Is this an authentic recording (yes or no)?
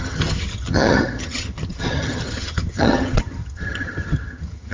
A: no